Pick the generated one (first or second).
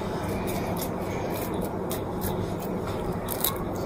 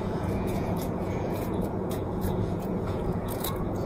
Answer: second